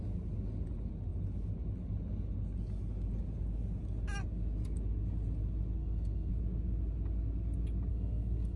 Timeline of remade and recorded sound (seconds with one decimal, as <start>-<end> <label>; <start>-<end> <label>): 0.0-5.8 recorded; 5.8-6.3 remade; 6.3-7.9 recorded; 7.9-8.6 remade